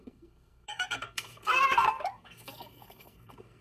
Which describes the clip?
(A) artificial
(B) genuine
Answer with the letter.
A